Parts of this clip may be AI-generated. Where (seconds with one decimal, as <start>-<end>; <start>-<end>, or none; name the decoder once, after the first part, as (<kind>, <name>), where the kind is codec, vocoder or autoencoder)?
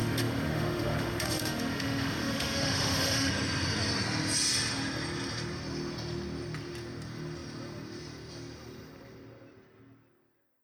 0.0-3.3 (autoencoder, DAC-VAE)